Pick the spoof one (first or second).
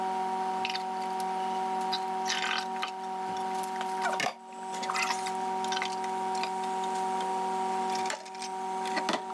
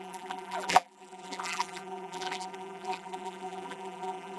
second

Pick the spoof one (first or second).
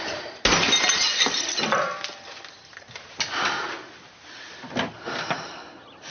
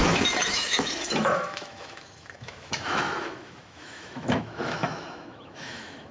second